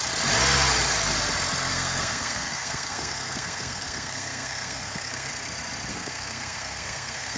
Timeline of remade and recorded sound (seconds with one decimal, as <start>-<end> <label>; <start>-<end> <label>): 0.0-1.7 recorded; 1.7-5.3 remade; 5.3-5.9 recorded; 5.9-7.4 remade